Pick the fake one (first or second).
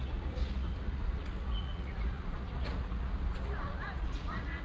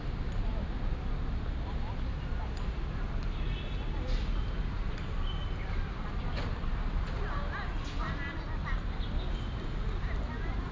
first